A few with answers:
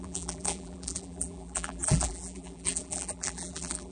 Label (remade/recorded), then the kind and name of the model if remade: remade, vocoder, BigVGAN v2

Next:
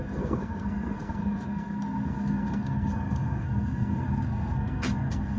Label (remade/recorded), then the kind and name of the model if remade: remade, codec, SNAC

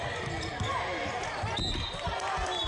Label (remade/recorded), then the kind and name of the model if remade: recorded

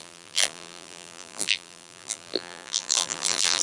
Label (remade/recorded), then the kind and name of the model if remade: remade, vocoder, BigVGAN v2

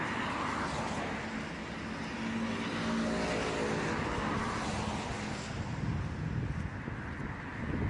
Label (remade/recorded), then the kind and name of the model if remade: recorded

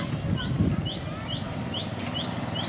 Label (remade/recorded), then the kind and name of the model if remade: recorded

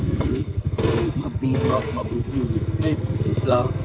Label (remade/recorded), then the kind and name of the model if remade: remade, codec, SNAC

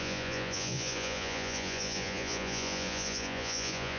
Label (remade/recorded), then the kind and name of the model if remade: remade, vocoder, Vocos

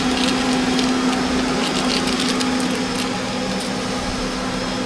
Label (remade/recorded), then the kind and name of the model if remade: recorded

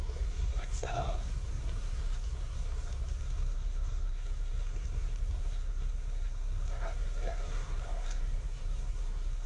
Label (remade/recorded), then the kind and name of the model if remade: remade, codec, SNAC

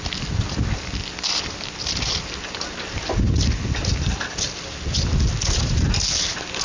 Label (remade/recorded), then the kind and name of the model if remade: recorded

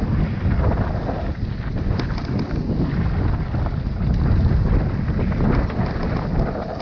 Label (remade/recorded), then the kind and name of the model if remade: recorded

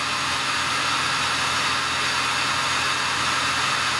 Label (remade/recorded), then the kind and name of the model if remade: recorded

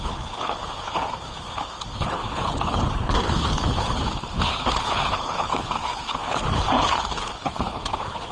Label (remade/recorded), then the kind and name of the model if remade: remade, codec, HILCodec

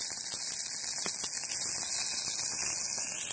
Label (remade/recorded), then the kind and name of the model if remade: recorded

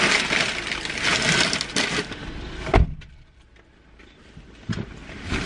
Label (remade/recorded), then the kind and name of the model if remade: recorded